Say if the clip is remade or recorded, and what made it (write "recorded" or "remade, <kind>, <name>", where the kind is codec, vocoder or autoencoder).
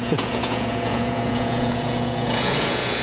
remade, vocoder, Vocos